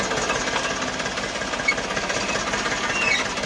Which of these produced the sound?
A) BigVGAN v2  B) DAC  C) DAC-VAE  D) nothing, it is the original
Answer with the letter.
D